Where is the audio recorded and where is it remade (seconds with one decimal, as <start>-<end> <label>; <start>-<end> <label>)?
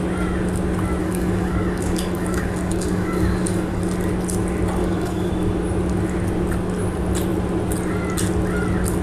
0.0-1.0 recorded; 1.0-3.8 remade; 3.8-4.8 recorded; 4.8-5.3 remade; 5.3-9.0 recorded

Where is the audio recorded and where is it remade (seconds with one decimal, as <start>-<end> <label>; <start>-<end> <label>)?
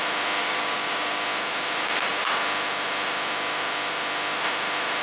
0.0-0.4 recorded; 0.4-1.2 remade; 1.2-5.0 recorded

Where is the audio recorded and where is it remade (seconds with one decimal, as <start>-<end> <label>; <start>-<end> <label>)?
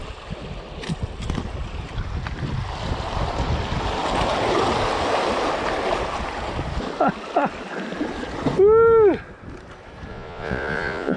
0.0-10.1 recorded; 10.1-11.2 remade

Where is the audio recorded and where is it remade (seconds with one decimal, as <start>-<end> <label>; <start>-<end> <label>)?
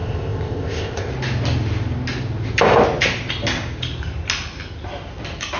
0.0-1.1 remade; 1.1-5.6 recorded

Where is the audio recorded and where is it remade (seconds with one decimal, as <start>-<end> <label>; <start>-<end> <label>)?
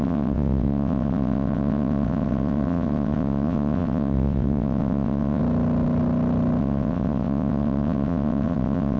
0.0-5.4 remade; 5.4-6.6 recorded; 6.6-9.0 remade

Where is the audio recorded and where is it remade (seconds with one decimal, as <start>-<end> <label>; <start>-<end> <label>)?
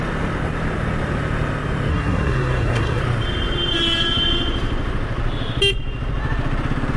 0.0-1.9 recorded; 1.9-3.0 remade; 3.0-7.0 recorded